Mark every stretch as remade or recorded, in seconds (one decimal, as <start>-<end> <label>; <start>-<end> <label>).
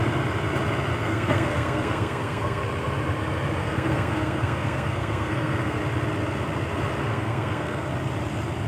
0.0-1.0 recorded; 1.0-2.6 remade; 2.6-3.6 recorded; 3.6-5.8 remade; 5.8-7.0 recorded; 7.0-7.9 remade; 7.9-8.7 recorded